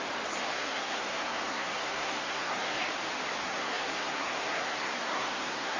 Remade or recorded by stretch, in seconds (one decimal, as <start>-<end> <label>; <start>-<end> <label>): 0.0-0.5 recorded; 0.5-2.8 remade; 2.8-3.4 recorded; 3.4-5.8 remade